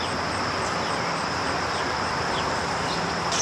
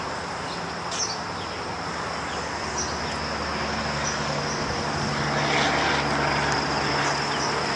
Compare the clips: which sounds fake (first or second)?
first